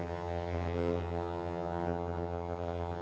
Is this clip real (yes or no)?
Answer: no